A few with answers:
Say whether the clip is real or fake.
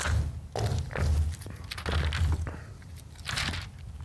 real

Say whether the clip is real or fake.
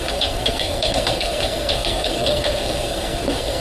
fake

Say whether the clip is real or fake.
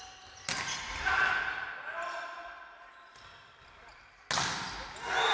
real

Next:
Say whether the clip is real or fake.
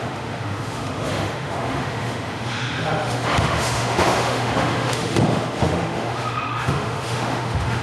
fake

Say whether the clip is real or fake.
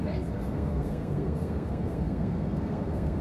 fake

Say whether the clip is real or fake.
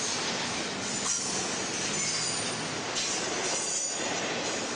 real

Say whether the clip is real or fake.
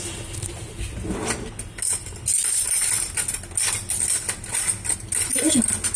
real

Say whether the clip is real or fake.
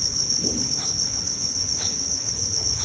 fake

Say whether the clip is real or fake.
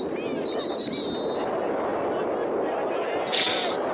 real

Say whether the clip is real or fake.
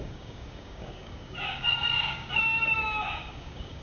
fake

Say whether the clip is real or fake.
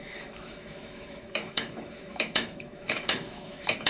fake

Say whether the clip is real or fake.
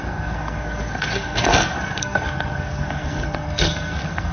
fake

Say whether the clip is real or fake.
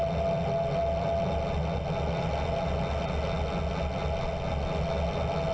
real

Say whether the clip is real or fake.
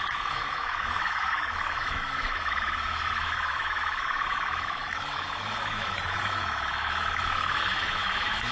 fake